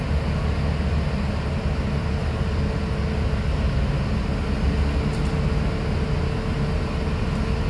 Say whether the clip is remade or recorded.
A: recorded